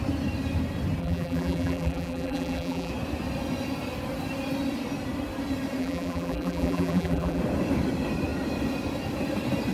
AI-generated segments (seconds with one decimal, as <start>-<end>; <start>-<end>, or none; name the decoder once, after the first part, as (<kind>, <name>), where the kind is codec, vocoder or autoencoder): 1.0-2.9 (vocoder, BigVGAN v2); 5.8-7.4